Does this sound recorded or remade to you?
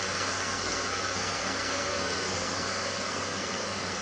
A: remade